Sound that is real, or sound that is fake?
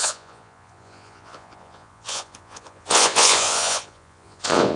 fake